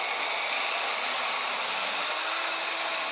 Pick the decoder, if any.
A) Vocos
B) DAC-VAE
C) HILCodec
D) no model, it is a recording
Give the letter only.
D